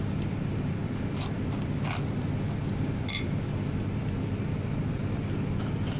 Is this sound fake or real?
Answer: real